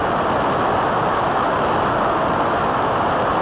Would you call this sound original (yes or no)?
yes